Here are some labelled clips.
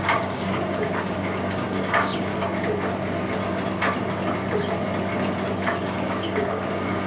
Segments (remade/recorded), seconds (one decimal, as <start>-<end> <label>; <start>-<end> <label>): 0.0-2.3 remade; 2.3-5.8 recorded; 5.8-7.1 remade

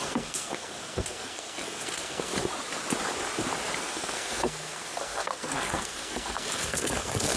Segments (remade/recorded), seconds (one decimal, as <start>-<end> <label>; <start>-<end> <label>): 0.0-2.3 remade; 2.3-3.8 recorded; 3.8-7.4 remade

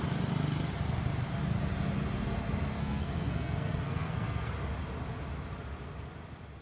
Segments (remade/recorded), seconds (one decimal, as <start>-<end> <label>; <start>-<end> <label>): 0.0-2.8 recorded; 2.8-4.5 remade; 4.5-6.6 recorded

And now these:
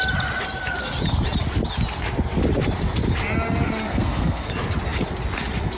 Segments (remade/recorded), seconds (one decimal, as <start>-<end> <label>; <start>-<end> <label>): 0.0-3.9 recorded; 3.9-4.5 remade; 4.5-5.8 recorded

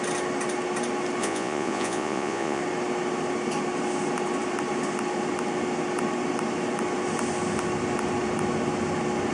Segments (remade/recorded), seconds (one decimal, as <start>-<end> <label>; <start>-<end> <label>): 0.0-1.2 recorded; 1.2-2.6 remade; 2.6-9.3 recorded

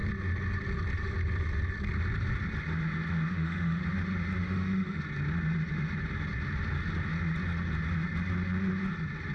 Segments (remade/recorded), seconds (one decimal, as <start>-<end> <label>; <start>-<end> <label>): 0.0-3.3 recorded; 3.3-3.8 remade; 3.8-4.4 recorded; 4.4-5.0 remade; 5.0-9.3 recorded